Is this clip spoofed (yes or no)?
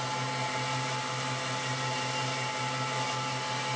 no